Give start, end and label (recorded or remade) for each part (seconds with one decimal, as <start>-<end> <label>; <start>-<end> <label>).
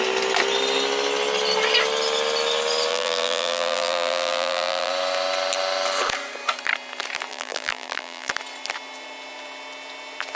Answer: 0.0-2.9 recorded; 2.9-4.9 remade; 4.9-7.3 recorded; 7.3-8.3 remade; 8.3-10.4 recorded